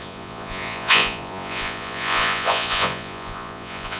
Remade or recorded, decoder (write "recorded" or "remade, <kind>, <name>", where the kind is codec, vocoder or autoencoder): remade, vocoder, Vocos